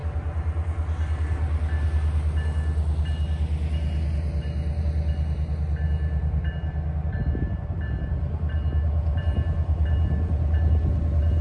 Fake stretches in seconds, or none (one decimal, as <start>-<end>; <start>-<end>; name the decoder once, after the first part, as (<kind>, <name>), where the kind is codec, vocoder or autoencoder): none